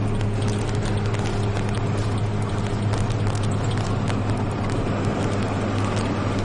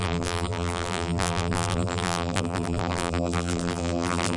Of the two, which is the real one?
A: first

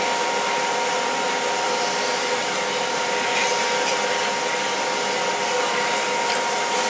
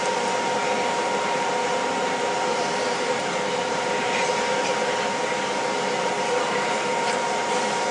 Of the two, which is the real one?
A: first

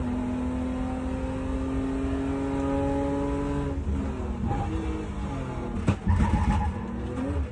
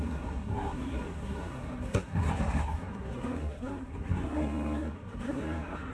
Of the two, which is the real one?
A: first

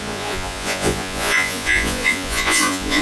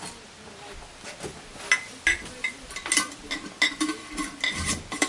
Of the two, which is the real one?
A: second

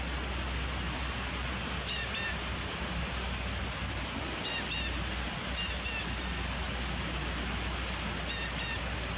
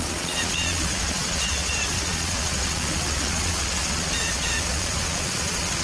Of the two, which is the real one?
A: first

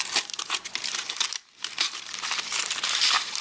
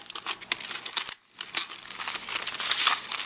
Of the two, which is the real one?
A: second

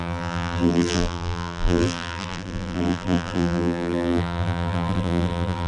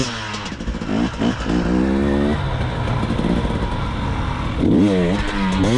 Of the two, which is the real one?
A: second